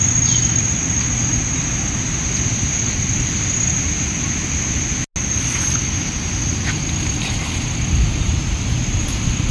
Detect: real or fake real